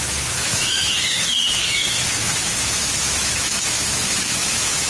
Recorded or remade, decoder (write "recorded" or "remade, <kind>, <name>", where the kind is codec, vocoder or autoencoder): remade, autoencoder, DAC-VAE